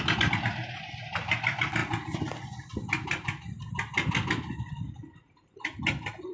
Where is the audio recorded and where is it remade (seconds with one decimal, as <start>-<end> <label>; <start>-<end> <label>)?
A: 0.0-6.3 recorded